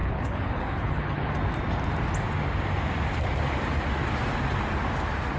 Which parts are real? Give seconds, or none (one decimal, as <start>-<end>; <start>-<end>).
1.3-5.4